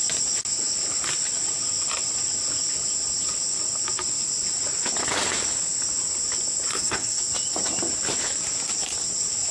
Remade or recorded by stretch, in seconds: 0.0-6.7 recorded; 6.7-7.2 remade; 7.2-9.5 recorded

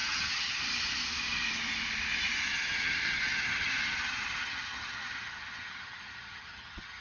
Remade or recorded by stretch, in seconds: 0.0-0.6 remade; 0.6-2.5 recorded; 2.5-7.0 remade

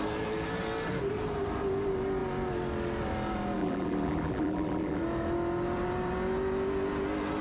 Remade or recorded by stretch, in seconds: 0.0-3.6 recorded; 3.6-5.0 remade; 5.0-7.4 recorded

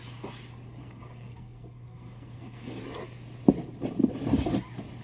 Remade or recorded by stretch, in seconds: 0.0-0.8 recorded; 0.8-2.8 remade; 2.8-5.0 recorded

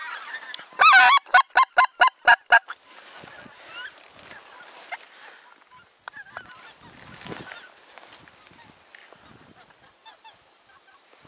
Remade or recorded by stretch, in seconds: 0.0-11.3 recorded